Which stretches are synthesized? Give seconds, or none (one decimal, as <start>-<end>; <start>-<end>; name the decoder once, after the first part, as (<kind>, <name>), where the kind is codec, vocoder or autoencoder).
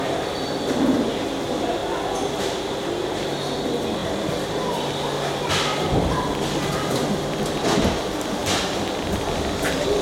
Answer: 1.8-2.4 (vocoder, BigVGAN v2); 4.0-4.7